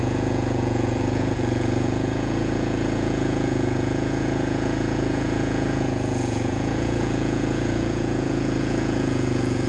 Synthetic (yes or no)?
yes